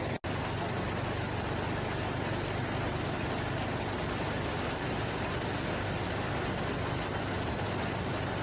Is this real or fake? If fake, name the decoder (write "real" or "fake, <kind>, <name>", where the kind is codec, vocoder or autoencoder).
real